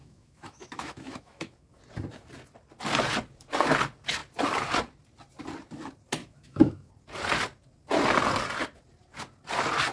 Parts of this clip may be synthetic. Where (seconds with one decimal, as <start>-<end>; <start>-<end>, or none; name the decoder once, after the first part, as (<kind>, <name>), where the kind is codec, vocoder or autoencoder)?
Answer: 0.0-1.8 (autoencoder, DAC-VAE); 6.2-6.9